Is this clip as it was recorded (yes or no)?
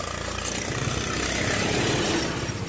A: yes